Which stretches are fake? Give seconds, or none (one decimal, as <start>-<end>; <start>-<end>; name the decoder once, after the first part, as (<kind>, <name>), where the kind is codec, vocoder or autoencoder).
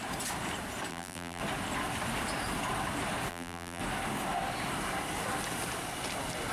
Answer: 0.9-1.4 (vocoder, BigVGAN v2); 3.3-3.8